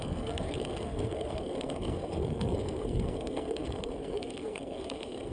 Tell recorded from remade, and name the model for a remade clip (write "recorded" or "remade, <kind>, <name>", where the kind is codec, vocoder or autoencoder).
remade, codec, SNAC